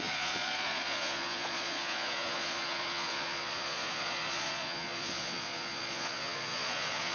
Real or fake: fake